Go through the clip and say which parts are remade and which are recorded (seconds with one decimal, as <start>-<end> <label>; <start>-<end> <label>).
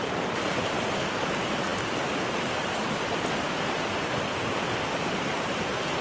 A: 0.0-6.0 recorded